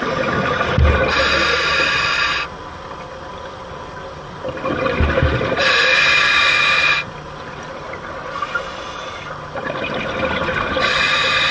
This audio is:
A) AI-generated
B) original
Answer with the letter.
B